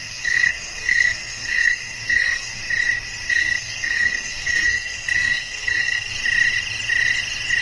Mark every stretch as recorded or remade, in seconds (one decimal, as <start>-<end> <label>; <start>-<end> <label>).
0.0-2.6 remade; 2.6-3.3 recorded; 3.3-6.1 remade; 6.1-7.6 recorded